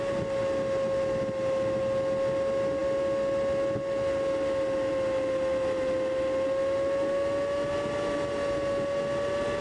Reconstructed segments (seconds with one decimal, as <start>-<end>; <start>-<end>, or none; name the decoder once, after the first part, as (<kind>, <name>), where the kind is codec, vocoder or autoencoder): none